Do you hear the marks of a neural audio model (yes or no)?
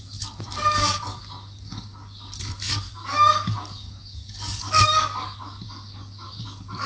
yes